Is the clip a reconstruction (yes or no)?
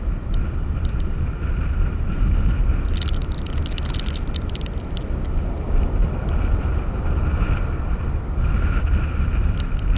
no